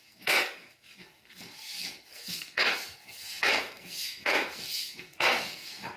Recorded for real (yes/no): no